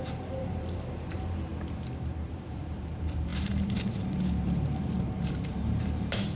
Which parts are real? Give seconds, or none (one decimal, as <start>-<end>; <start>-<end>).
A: 1.5-2.3